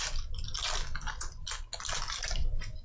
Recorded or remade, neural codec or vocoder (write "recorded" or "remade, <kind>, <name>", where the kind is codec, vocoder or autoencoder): recorded